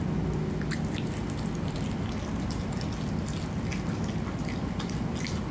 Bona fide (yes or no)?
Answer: yes